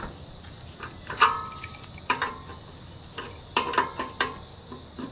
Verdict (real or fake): fake